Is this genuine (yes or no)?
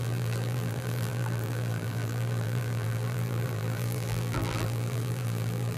no